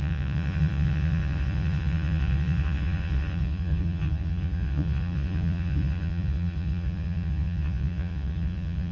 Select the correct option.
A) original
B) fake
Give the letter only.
B